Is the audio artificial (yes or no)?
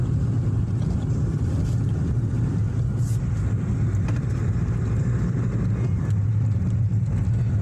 no